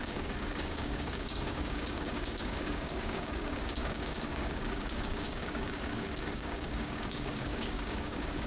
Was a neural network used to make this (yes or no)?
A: yes